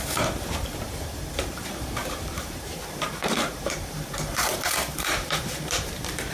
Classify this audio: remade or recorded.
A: remade